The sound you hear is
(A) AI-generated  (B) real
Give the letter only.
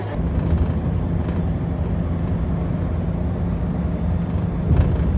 B